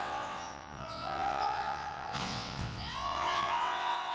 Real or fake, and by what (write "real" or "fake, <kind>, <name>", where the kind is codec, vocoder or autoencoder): fake, vocoder, WaveNeXt